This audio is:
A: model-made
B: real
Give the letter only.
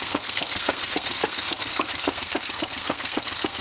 A